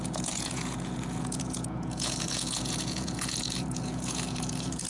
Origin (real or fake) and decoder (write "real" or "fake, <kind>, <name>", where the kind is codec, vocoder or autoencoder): fake, vocoder, Vocos